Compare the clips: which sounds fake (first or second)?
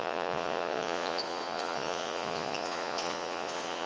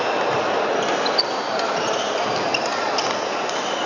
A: first